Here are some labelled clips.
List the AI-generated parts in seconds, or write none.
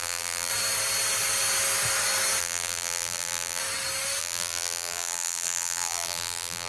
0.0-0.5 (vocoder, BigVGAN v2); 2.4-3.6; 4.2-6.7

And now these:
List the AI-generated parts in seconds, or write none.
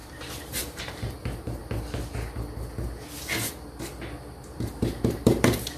0.0-1.6 (vocoder, BigVGAN v2); 4.3-5.8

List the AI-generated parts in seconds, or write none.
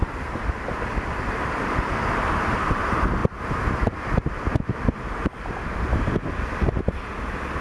0.0-2.8 (vocoder, BigVGAN v2)